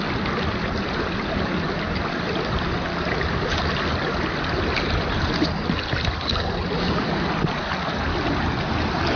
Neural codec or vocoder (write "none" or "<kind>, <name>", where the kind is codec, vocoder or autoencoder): none